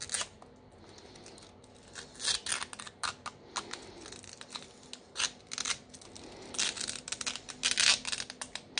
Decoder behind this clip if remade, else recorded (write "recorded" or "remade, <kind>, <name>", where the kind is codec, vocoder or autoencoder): recorded